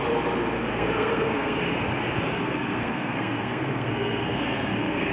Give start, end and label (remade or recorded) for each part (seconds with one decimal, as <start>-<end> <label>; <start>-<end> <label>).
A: 0.0-0.7 recorded; 0.7-1.6 remade; 1.6-2.3 recorded; 2.3-5.1 remade